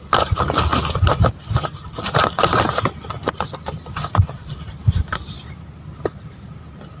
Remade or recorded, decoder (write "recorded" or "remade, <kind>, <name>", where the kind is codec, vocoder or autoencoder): recorded